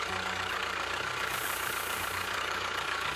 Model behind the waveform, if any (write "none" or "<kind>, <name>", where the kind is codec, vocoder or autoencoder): codec, DAC